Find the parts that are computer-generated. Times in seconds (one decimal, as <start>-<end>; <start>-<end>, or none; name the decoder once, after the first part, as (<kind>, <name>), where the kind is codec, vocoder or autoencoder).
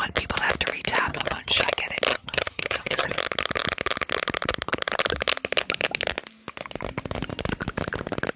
1.1-1.7 (vocoder, HiFi-GAN); 2.1-3.2